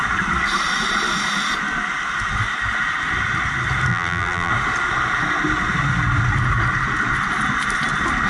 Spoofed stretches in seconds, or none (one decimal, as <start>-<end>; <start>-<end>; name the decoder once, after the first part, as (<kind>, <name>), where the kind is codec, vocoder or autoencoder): 3.9-4.5 (vocoder, BigVGAN v2)